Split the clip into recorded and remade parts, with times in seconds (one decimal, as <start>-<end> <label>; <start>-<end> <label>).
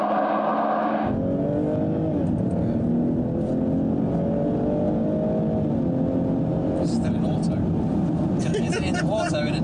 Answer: 0.0-9.6 recorded